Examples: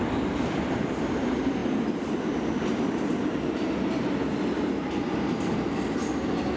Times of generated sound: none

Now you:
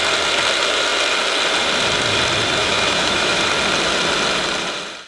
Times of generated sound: 2.6-3.4 (autoencoder, DAC-VAE)

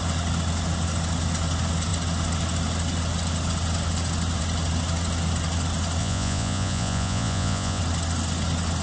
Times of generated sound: 6.0-7.8 (vocoder, Vocos)

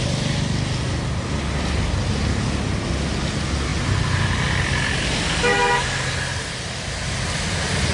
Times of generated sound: none

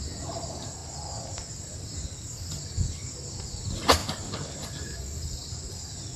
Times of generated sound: none